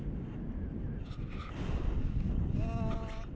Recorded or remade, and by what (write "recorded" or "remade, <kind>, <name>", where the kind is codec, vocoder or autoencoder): recorded